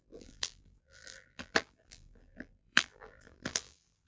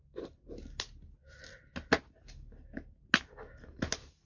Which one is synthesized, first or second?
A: first